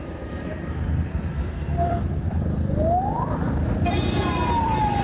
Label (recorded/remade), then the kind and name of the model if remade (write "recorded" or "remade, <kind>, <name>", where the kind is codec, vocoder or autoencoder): remade, vocoder, BigVGAN v2